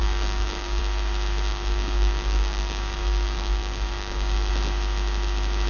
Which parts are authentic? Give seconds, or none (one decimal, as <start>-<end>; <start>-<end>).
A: 0.8-1.5; 4.5-5.7